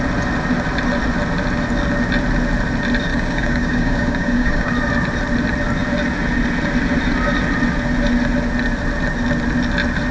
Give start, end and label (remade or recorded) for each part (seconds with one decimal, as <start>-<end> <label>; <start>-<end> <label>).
0.0-3.1 recorded; 3.1-4.7 remade; 4.7-10.1 recorded